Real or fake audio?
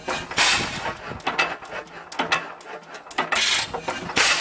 real